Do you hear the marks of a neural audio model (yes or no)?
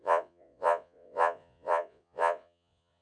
yes